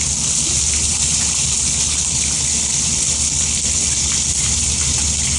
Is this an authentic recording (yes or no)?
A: yes